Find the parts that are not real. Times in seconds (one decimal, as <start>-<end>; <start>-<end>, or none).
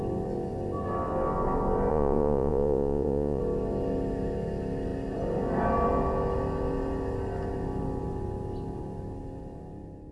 1.9-3.4